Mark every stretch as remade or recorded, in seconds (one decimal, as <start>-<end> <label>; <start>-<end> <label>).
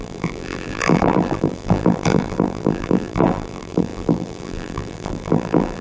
0.0-5.8 remade